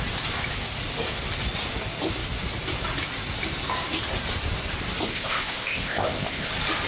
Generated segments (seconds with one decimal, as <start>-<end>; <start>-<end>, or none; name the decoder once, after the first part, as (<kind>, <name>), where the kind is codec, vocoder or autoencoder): 5.1-6.5 (codec, ZipCodec)